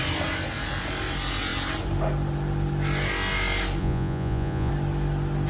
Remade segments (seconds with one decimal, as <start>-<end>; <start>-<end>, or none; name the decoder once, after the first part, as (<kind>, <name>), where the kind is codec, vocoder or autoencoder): 3.8-4.7 (vocoder, Vocos)